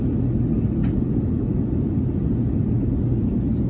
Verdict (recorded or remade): recorded